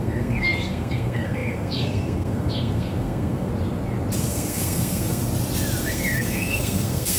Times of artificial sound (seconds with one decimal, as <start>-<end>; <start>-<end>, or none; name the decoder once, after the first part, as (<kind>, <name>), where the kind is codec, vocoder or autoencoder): 0.0-3.5 (codec, SNAC); 4.2-5.2; 5.8-7.2